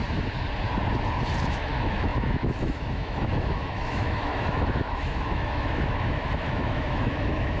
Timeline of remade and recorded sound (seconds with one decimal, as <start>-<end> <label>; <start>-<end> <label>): 0.0-1.5 recorded; 1.5-7.6 remade